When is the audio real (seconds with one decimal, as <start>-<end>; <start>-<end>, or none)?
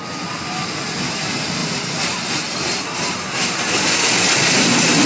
0.0-1.6; 4.0-5.1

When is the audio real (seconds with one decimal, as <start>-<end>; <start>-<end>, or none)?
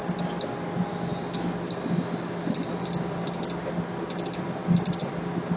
0.0-5.6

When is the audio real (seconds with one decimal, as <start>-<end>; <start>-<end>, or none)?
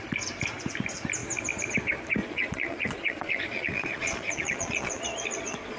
0.0-2.2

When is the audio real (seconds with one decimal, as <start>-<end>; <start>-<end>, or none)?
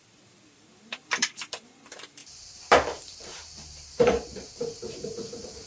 none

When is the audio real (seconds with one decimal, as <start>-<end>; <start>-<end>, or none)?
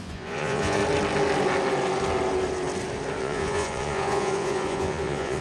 0.8-3.2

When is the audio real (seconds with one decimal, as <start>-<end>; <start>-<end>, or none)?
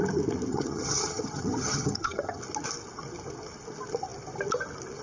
0.0-0.5; 2.4-5.0